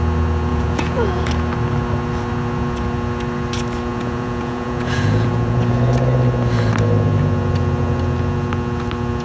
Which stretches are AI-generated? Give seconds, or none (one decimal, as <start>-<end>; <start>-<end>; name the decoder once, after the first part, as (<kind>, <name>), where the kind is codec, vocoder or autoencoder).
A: 0.5-1.3 (vocoder, Vocos); 3.9-5.6